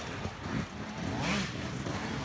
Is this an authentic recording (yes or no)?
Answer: yes